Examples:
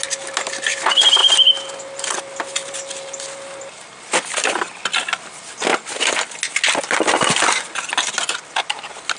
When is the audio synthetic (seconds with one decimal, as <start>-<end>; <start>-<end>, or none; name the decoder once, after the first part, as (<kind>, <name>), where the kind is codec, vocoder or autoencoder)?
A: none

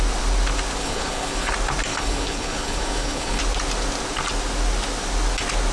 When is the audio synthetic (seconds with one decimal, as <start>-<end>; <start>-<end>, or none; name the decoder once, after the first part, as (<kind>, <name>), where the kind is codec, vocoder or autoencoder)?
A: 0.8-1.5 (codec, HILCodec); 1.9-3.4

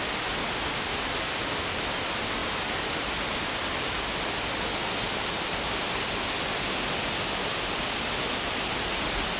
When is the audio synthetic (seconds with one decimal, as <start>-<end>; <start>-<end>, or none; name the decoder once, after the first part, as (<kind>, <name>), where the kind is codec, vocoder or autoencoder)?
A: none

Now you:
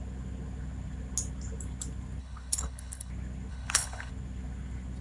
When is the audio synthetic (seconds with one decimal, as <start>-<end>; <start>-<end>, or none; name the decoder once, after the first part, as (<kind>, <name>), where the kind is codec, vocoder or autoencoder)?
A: 2.2-3.1 (codec, HILCodec); 3.5-4.1

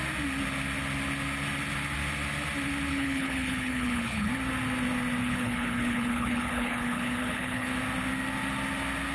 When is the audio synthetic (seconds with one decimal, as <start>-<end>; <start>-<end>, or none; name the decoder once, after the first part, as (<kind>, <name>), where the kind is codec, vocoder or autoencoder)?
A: 2.9-4.3 (codec, HILCodec); 5.2-7.7

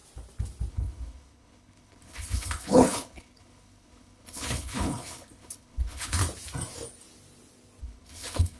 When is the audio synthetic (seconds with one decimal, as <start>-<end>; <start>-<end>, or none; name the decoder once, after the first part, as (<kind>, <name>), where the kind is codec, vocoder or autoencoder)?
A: 0.7-6.2 (codec, HILCodec); 7.8-8.6

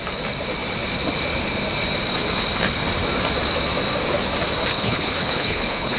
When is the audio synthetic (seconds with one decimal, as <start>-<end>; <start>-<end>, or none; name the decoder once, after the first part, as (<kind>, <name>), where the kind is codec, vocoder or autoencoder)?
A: 4.7-6.0 (codec, HILCodec)